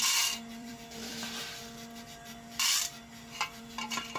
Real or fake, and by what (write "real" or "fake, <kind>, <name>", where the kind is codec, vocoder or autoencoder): fake, vocoder, BigVGAN v2